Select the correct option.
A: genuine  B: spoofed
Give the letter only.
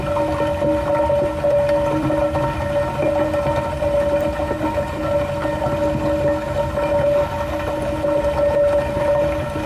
A